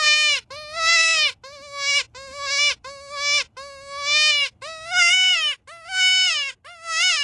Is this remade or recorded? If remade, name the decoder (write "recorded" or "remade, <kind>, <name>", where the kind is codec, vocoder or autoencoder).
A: recorded